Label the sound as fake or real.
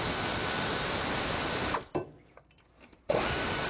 real